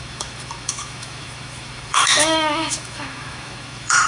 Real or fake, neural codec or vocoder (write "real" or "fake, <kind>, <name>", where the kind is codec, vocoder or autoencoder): fake, autoencoder, DAC-VAE